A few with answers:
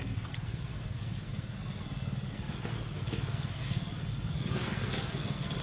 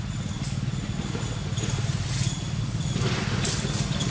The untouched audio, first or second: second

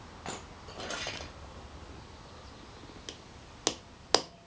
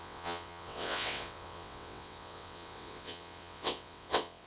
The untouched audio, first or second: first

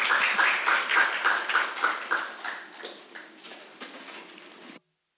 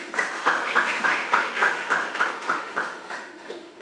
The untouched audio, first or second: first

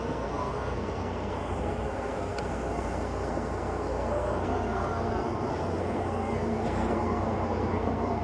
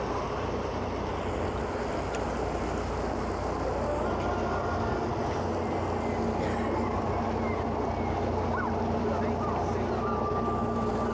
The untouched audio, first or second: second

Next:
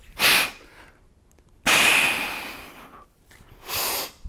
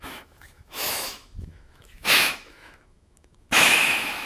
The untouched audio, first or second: first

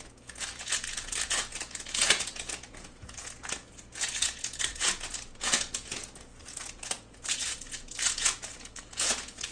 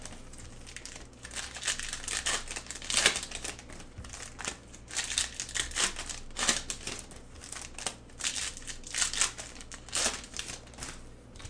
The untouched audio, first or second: second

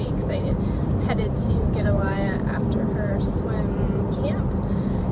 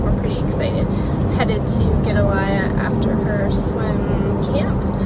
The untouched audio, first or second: second